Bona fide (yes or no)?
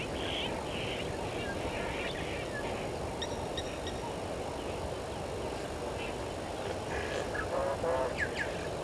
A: yes